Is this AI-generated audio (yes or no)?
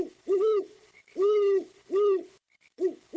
yes